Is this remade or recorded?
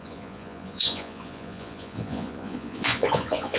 remade